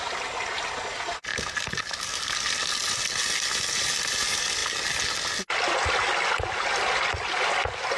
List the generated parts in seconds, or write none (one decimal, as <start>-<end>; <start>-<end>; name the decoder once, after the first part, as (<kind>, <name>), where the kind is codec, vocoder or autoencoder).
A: none